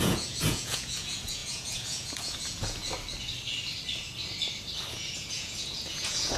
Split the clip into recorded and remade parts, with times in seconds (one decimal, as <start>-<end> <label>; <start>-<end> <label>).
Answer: 0.0-2.8 remade; 2.8-4.9 recorded; 4.9-6.4 remade